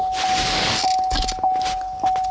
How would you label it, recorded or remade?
recorded